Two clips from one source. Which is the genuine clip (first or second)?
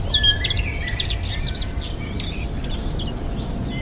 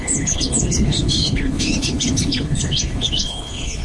first